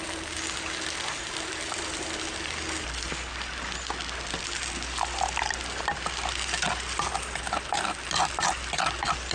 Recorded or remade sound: recorded